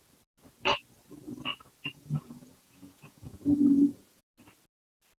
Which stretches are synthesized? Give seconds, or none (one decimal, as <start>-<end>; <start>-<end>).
1.9-4.3